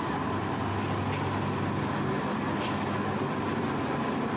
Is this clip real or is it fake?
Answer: real